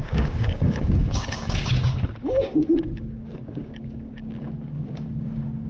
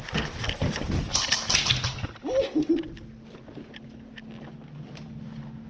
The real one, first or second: second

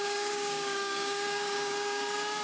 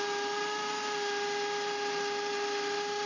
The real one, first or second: second